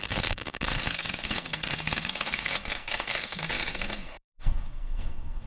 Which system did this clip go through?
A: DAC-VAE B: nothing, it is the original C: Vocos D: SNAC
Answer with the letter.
D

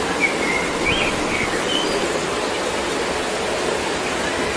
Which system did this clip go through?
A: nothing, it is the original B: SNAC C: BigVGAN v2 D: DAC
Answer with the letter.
A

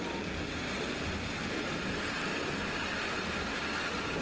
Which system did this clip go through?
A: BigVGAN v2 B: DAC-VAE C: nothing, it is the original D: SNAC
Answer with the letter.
C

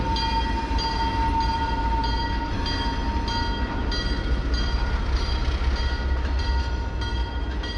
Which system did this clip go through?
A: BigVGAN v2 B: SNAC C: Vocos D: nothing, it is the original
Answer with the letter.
D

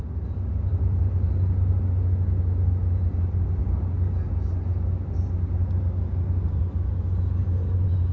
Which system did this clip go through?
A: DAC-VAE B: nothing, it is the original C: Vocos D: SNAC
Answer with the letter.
B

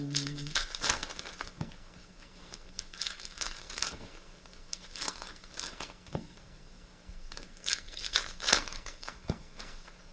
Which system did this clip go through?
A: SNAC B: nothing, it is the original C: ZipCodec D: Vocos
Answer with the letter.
A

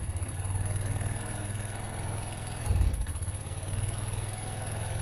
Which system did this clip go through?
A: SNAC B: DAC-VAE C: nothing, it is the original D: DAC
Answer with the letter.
A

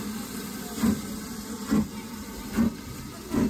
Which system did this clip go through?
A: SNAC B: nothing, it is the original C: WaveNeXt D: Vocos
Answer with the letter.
B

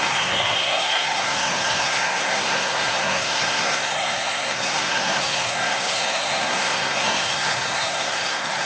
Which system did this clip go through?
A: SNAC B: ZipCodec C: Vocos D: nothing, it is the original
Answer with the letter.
A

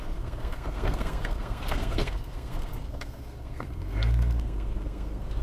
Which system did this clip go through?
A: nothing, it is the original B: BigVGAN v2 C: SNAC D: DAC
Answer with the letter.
C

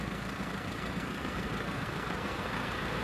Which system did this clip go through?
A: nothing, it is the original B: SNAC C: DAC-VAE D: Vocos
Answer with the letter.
B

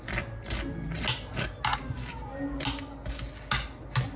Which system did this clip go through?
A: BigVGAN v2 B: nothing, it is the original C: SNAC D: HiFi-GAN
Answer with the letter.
B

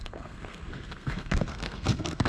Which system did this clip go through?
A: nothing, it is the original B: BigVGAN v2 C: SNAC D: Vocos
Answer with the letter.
C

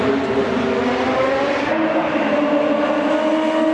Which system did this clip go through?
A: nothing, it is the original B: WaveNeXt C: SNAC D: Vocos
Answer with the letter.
A